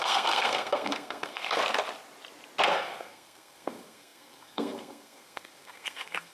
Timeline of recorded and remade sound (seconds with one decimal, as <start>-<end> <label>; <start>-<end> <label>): 0.0-1.6 remade; 1.6-2.7 recorded; 2.7-6.3 remade